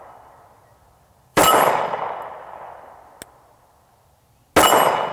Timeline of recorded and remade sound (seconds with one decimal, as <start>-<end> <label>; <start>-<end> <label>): 0.0-1.3 recorded; 1.3-2.0 remade; 2.0-5.1 recorded